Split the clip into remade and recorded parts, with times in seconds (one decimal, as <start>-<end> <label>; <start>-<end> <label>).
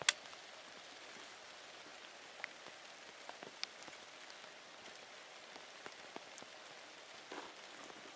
0.0-8.2 recorded